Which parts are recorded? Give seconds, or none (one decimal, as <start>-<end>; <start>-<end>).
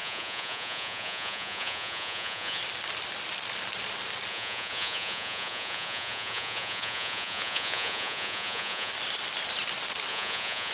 2.6-4.3; 8.9-10.1